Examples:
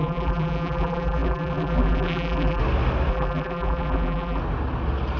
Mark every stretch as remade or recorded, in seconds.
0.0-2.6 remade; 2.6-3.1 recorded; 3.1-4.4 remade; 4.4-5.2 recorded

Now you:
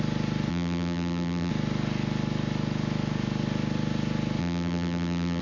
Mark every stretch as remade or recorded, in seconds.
0.0-0.5 recorded; 0.5-1.5 remade; 1.5-4.4 recorded; 4.4-5.4 remade